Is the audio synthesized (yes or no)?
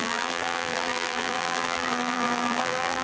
yes